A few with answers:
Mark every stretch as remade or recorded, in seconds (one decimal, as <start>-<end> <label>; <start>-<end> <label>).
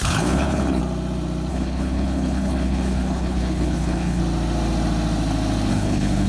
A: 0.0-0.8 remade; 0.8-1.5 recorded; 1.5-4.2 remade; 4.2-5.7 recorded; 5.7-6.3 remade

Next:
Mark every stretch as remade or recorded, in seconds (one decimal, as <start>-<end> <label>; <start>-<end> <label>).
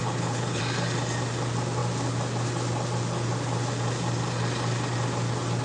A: 0.0-0.6 remade; 0.6-5.6 recorded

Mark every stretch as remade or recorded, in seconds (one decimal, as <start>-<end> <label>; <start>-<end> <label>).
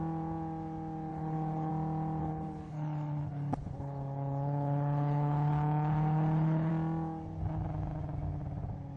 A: 0.0-1.1 recorded; 1.1-1.7 remade; 1.7-2.2 recorded; 2.2-6.7 remade; 6.7-9.0 recorded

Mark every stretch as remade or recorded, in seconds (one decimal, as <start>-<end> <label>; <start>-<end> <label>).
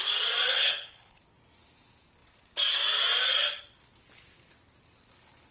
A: 0.0-0.5 recorded; 0.5-1.2 remade; 1.2-5.5 recorded